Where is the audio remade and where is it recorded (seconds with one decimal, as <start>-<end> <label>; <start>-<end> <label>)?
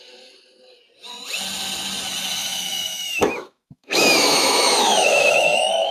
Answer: 0.0-2.4 recorded; 2.4-5.9 remade